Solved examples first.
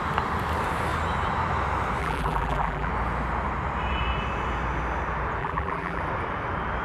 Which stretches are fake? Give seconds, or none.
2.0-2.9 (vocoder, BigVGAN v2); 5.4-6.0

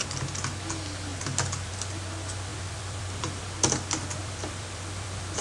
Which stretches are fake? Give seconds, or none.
1.1-1.7 (vocoder, BigVGAN v2); 2.5-3.4; 4.2-5.4

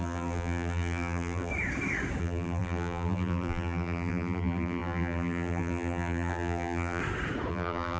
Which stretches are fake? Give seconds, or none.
0.0-1.5 (vocoder, BigVGAN v2); 2.2-7.0; 7.5-8.0

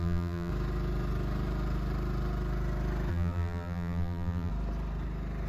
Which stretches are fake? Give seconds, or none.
0.0-0.5 (vocoder, BigVGAN v2); 3.1-4.5

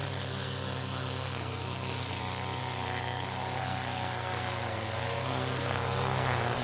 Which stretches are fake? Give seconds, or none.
0.0-2.2 (codec, SNAC); 2.6-6.6

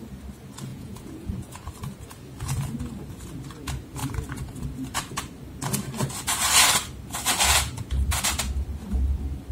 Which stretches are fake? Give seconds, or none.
0.7-1.7 (vocoder, Vocos)